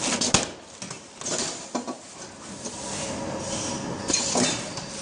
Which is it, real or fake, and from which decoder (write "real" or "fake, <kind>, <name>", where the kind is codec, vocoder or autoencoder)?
real